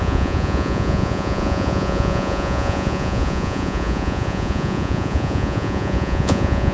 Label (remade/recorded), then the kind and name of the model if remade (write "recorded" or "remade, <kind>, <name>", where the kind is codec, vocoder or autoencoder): remade, vocoder, Vocos